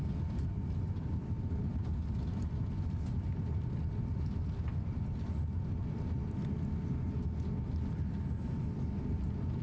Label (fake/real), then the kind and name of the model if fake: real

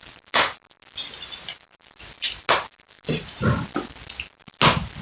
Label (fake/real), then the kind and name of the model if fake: real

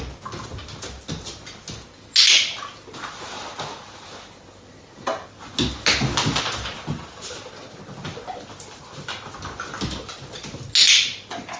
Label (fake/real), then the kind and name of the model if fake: real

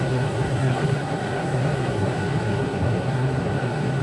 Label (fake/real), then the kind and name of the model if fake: fake, codec, SNAC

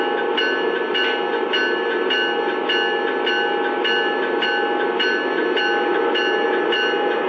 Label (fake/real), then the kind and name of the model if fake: real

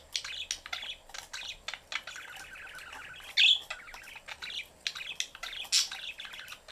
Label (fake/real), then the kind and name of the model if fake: real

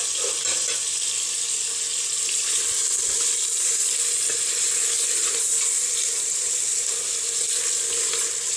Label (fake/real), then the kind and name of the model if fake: real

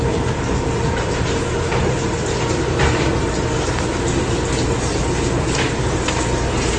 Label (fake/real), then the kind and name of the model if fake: real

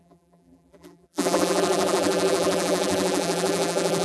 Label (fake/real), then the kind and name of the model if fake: fake, vocoder, BigVGAN v2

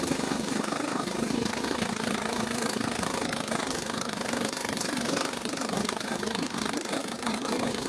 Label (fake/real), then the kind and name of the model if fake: fake, codec, SNAC